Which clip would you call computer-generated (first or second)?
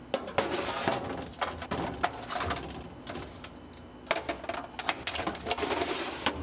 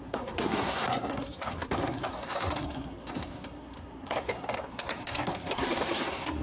second